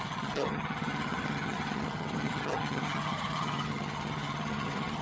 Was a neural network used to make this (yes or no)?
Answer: yes